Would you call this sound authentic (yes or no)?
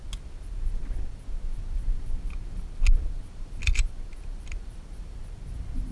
yes